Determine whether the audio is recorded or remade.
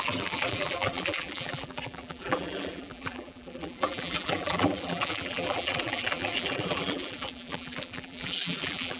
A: remade